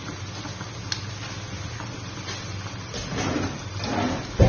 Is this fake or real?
real